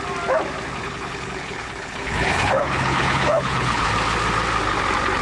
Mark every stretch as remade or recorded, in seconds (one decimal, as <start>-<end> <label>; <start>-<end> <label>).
0.0-0.8 recorded; 0.8-3.9 remade; 3.9-5.2 recorded

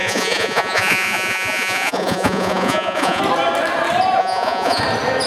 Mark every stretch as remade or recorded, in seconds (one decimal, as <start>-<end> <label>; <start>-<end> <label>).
0.0-3.2 remade; 3.2-4.2 recorded; 4.2-4.8 remade; 4.8-5.3 recorded

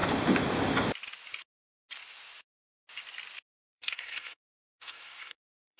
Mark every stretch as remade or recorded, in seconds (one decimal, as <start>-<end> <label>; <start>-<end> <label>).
0.0-3.5 recorded; 3.5-5.8 remade

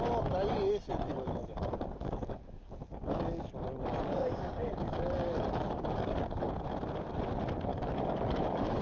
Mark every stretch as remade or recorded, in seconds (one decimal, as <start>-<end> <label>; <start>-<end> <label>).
0.0-0.9 recorded; 0.9-3.5 remade; 3.5-4.1 recorded; 4.1-6.5 remade; 6.5-7.7 recorded; 7.7-8.8 remade

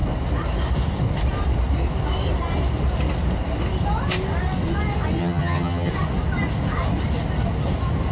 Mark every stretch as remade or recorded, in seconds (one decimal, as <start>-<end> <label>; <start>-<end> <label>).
0.0-5.2 recorded; 5.2-5.9 remade; 5.9-8.1 recorded

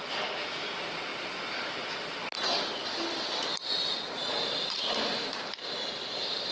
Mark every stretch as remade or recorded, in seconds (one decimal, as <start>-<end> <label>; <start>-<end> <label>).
0.0-6.5 recorded

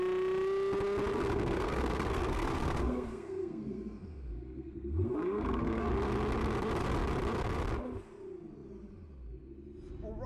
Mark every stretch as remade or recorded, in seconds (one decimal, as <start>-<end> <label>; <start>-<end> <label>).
0.0-1.1 recorded; 1.1-5.9 remade; 5.9-10.3 recorded